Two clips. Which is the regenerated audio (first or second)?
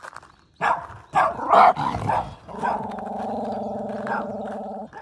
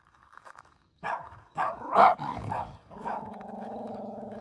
second